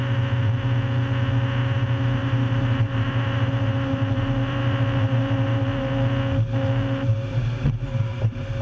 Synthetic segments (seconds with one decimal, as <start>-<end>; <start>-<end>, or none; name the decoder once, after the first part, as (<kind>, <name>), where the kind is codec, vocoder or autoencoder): 2.2-5.9 (vocoder, BigVGAN v2)